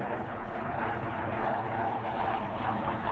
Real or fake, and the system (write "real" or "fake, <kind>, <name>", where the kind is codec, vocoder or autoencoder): fake, codec, HILCodec